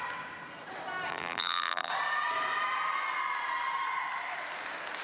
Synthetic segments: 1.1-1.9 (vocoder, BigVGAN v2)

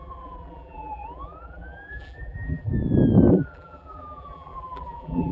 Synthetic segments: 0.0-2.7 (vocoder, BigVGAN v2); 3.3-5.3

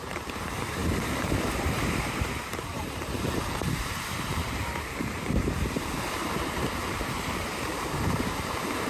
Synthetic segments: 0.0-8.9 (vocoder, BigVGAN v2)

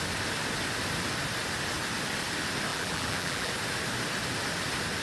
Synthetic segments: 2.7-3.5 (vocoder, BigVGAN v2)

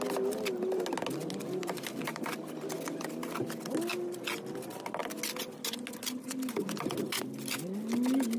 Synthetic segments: 1.6-2.4 (vocoder, BigVGAN v2)

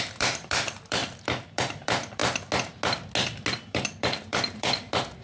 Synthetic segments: 0.0-2.2 (vocoder, BigVGAN v2); 3.5-5.2

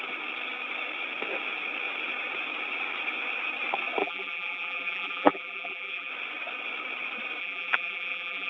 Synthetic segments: 4.0-6.1 (vocoder, BigVGAN v2); 7.4-8.5

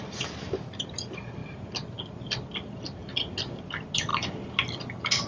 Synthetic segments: 0.0-1.4 (vocoder, BigVGAN v2); 2.1-3.0; 3.6-4.1; 4.8-5.3